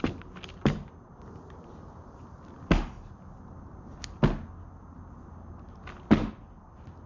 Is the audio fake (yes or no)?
no